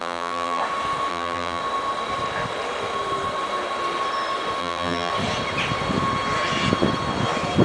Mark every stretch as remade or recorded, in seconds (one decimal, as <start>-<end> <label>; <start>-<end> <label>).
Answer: 0.0-0.6 remade; 0.6-1.1 recorded; 1.1-1.6 remade; 1.6-4.6 recorded; 4.6-5.1 remade; 5.1-7.6 recorded